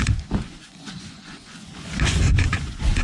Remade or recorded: remade